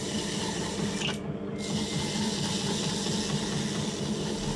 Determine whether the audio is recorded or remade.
recorded